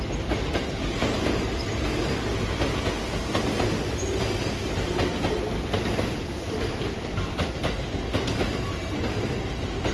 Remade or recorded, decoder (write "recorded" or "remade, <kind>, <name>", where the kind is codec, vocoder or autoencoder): recorded